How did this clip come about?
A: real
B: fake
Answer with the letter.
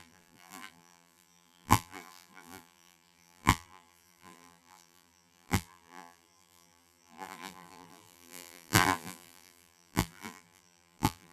B